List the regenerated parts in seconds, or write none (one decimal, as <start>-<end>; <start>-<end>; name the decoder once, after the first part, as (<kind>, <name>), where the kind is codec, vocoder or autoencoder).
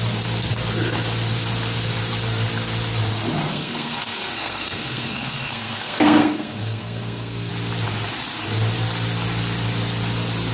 3.5-7.5 (codec, SNAC)